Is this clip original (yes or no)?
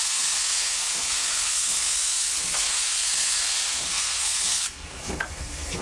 no